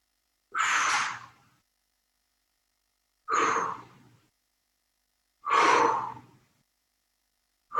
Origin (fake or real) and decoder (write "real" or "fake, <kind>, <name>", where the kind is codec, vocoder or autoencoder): fake, vocoder, BigVGAN v2